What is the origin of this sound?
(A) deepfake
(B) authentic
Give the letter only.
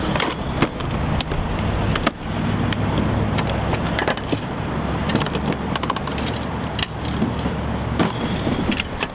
B